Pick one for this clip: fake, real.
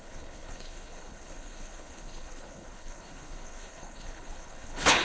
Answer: fake